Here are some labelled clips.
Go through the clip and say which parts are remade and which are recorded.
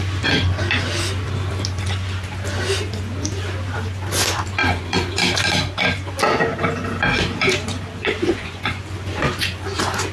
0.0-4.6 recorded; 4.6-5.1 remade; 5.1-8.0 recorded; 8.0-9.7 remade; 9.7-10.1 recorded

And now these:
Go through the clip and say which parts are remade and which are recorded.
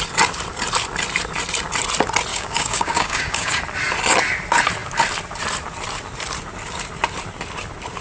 0.0-2.3 recorded; 2.3-3.6 remade; 3.6-8.0 recorded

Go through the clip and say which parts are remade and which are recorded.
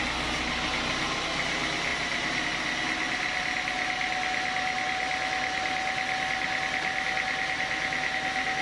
0.0-1.9 recorded; 1.9-2.5 remade; 2.5-8.6 recorded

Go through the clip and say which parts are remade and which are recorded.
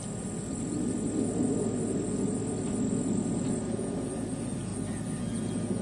0.0-5.8 recorded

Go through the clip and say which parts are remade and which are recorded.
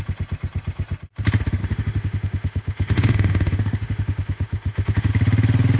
0.0-1.6 recorded; 1.6-5.1 remade; 5.1-5.8 recorded